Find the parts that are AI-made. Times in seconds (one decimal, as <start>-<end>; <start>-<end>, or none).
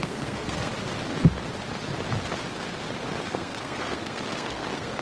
0.0-0.7; 3.2-5.0